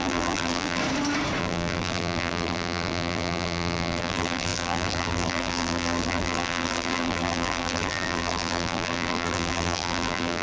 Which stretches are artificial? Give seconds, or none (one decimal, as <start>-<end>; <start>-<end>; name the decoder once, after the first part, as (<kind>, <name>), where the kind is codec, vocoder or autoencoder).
0.0-0.8 (vocoder, BigVGAN v2); 1.4-10.4